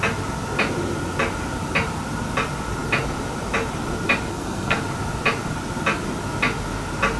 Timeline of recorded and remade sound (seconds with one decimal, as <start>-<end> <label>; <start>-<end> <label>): 0.0-4.3 recorded; 4.3-4.8 remade; 4.8-7.2 recorded